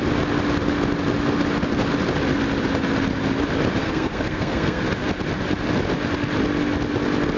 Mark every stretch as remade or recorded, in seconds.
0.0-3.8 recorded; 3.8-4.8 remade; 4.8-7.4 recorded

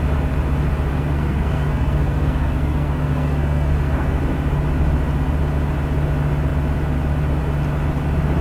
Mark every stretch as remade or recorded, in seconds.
0.0-0.9 recorded; 0.9-4.2 remade; 4.2-8.4 recorded

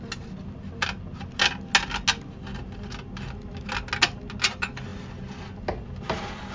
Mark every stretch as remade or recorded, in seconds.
0.0-6.5 recorded

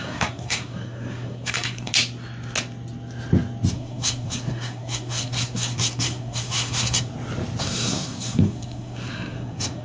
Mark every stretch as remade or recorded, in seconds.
0.0-1.9 remade; 1.9-3.7 recorded; 3.7-7.1 remade; 7.1-7.6 recorded; 7.6-9.8 remade